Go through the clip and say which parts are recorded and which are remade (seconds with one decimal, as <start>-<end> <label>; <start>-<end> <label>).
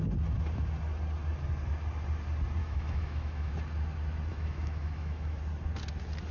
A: 0.0-2.6 recorded; 2.6-3.5 remade; 3.5-4.3 recorded; 4.3-5.4 remade; 5.4-6.3 recorded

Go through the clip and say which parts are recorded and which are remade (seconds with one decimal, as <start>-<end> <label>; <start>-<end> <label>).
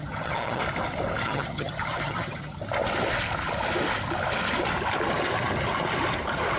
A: 0.0-0.6 remade; 0.6-1.2 recorded; 1.2-2.6 remade; 2.6-6.6 recorded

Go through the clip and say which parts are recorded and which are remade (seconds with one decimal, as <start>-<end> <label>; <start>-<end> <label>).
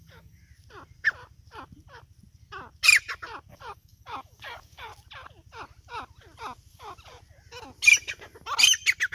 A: 0.0-0.4 remade; 0.4-3.5 recorded; 3.5-4.9 remade; 4.9-9.1 recorded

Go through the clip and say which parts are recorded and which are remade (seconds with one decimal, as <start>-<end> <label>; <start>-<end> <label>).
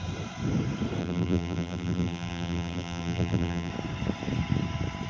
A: 0.0-1.0 recorded; 1.0-3.7 remade; 3.7-5.1 recorded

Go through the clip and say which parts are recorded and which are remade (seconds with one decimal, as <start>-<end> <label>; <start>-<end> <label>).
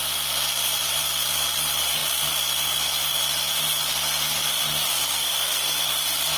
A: 0.0-4.9 recorded; 4.9-5.8 remade; 5.8-6.4 recorded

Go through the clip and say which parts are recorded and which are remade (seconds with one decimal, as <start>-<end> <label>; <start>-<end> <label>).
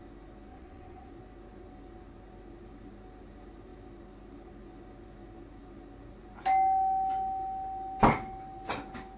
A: 0.0-0.5 recorded; 0.5-1.1 remade; 1.1-9.2 recorded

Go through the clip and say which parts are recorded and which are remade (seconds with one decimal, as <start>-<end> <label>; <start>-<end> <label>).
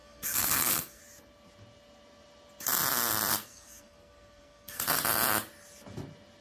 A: 0.0-1.0 remade; 1.0-3.3 recorded; 3.3-4.8 remade; 4.8-6.4 recorded